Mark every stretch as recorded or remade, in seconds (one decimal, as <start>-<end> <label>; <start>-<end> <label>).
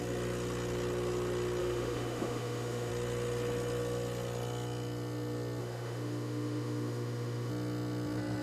0.0-1.6 recorded; 1.6-2.9 remade; 2.9-5.6 recorded; 5.6-7.5 remade; 7.5-8.4 recorded